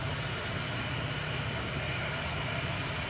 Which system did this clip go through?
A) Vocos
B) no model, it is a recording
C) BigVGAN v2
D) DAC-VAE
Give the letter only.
B